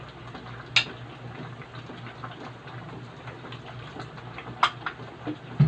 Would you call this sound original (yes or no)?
yes